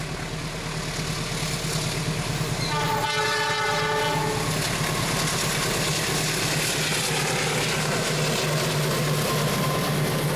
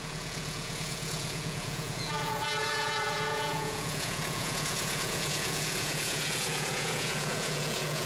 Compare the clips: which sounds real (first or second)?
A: first